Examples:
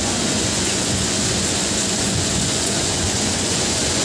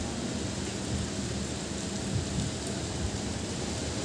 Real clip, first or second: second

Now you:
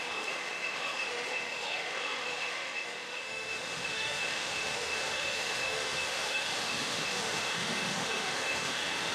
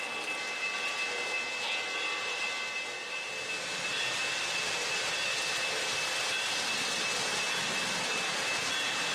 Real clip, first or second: second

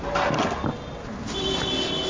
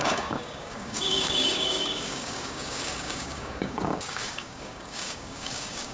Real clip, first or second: first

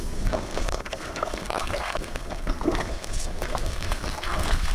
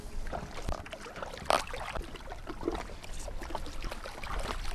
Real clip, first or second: second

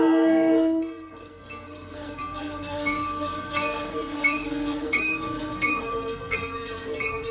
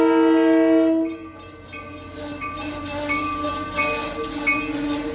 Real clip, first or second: second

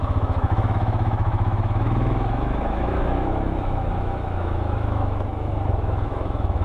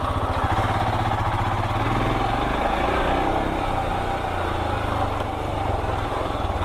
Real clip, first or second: second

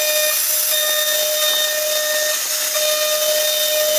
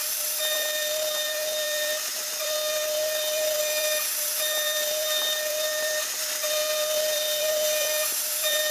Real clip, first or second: first